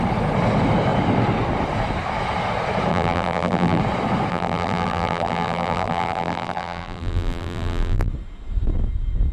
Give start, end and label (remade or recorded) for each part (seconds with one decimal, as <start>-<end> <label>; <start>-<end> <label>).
0.0-2.9 recorded; 2.9-3.8 remade; 3.8-4.3 recorded; 4.3-8.1 remade; 8.1-9.3 recorded